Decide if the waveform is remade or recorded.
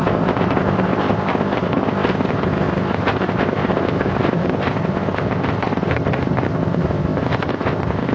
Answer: remade